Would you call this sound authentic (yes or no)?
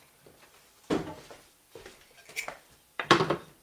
no